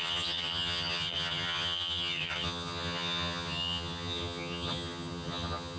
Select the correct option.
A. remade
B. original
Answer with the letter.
A